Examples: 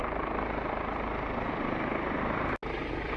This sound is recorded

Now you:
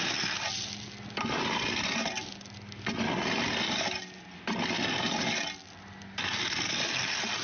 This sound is recorded